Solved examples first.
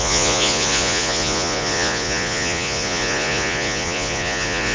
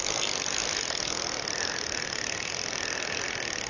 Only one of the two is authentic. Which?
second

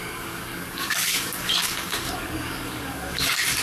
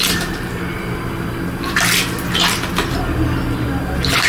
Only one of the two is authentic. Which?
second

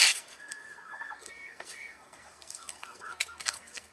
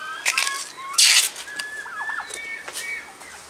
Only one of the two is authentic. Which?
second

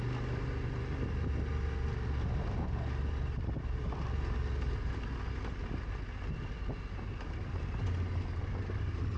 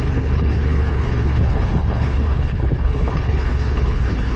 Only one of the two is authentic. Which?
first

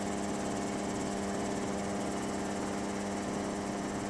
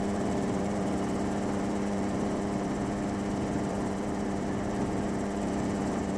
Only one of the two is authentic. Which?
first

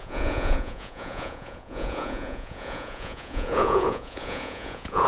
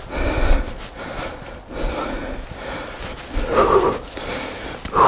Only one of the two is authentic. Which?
second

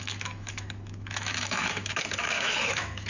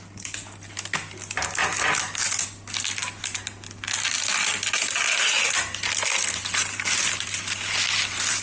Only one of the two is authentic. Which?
second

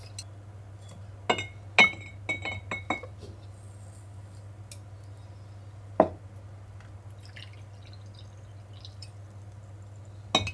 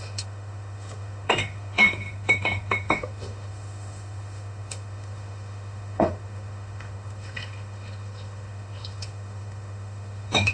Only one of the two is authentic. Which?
first